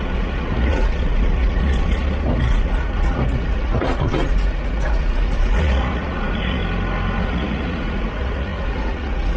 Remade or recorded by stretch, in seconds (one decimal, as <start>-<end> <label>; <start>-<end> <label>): 0.0-6.6 remade; 6.6-7.2 recorded; 7.2-9.4 remade